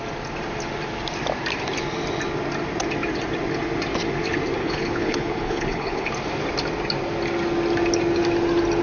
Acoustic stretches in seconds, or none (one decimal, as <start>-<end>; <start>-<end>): 0.0-4.6; 6.1-8.8